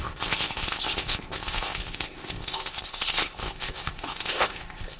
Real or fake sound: fake